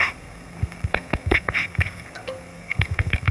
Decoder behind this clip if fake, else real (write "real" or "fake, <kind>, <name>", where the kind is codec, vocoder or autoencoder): fake, codec, SNAC